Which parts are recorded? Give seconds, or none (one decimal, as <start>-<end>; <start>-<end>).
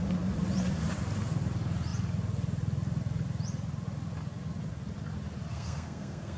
0.0-5.5